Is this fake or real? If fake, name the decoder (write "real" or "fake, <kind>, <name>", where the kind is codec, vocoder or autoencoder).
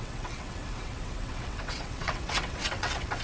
fake, vocoder, WaveNeXt